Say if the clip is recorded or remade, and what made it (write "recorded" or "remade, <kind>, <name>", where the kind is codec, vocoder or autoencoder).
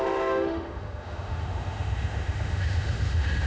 remade, autoencoder, DAC-VAE